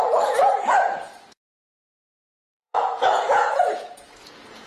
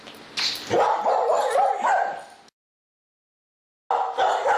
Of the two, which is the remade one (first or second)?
first